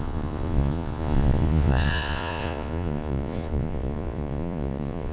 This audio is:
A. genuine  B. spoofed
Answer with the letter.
B